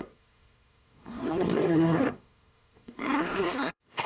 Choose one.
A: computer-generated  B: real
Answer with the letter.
A